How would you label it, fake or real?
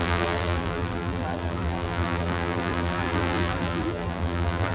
fake